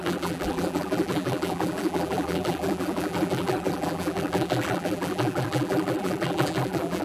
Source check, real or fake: fake